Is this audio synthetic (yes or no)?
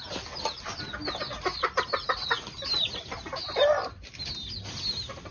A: no